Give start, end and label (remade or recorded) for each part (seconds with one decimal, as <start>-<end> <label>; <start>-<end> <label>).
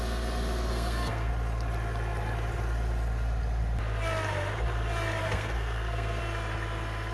0.0-0.7 recorded; 0.7-1.3 remade; 1.3-5.2 recorded; 5.2-6.2 remade; 6.2-7.1 recorded